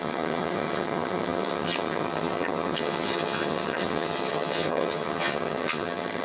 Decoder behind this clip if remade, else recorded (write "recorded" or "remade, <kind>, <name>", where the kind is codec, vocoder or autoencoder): remade, vocoder, HiFi-GAN